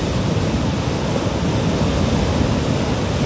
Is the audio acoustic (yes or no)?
yes